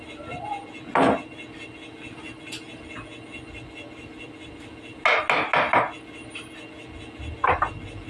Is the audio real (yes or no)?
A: yes